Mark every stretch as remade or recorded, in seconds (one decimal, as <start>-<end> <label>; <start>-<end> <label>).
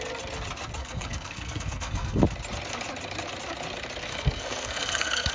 0.0-0.8 recorded; 0.8-2.2 remade; 2.2-4.1 recorded; 4.1-5.3 remade